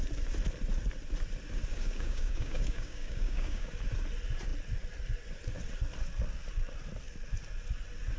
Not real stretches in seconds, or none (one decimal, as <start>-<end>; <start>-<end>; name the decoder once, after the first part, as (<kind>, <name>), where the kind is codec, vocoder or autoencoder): 1.7-3.7 (codec, DAC)